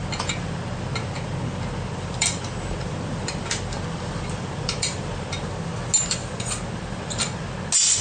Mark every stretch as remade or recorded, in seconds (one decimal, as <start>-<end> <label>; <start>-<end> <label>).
0.0-1.9 recorded; 1.9-5.3 remade; 5.3-6.2 recorded; 6.2-7.4 remade; 7.4-8.0 recorded